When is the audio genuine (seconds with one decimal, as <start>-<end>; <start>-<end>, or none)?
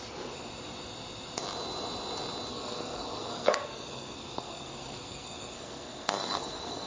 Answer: 0.0-2.5